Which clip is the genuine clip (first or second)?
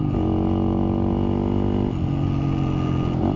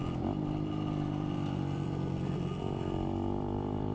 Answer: first